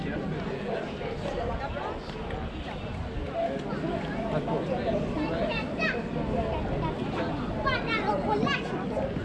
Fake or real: real